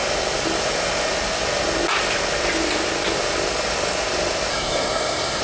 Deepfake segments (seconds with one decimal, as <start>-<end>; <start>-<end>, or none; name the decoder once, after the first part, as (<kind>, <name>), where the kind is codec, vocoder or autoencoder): 4.5-5.4 (codec, SNAC)